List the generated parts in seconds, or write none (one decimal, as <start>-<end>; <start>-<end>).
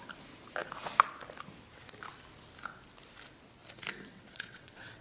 4.1-5.0